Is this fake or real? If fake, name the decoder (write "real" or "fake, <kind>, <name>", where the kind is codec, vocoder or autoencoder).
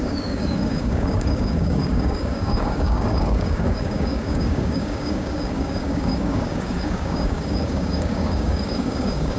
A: fake, codec, DAC